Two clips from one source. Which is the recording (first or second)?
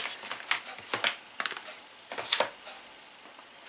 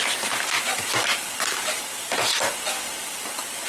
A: first